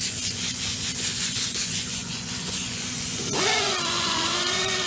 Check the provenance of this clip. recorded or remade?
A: remade